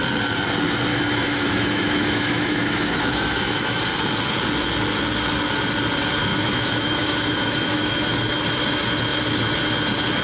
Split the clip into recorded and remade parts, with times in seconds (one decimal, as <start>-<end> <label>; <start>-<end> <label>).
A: 0.0-0.9 recorded; 0.9-3.8 remade; 3.8-6.3 recorded; 6.3-8.0 remade; 8.0-10.2 recorded